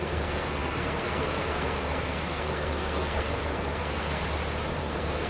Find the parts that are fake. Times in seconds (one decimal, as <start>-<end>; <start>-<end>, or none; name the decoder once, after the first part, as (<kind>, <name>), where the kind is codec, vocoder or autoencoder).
0.0-4.2 (codec, SNAC); 4.8-5.3